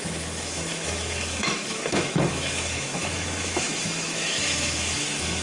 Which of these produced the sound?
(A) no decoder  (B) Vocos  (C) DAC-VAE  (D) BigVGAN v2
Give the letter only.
C